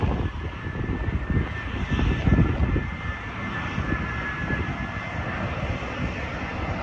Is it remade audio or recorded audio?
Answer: recorded